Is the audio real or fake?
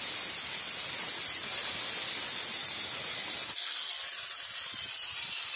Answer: real